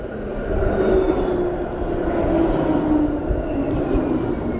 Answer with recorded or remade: recorded